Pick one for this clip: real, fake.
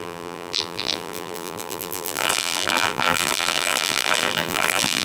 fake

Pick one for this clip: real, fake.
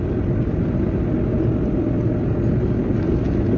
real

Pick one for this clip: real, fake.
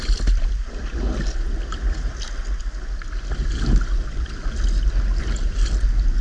real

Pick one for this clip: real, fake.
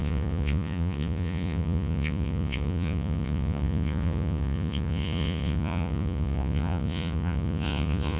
fake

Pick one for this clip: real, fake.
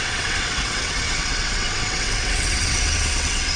fake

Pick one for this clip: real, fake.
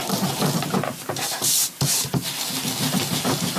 real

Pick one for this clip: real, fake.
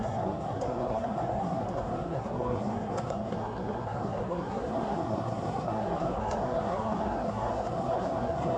fake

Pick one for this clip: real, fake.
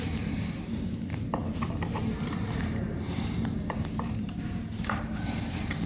fake